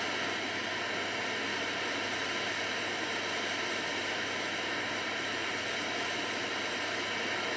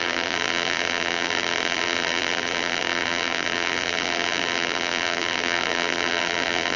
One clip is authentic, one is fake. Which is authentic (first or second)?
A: first